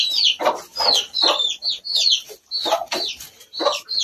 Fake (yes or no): no